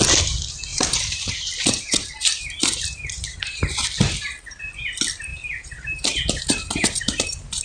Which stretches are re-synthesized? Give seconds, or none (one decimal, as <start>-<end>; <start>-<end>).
0.7-3.6; 5.3-7.6